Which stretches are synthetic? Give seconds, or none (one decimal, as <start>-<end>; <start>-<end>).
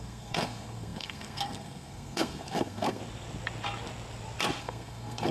0.0-3.0; 4.6-5.3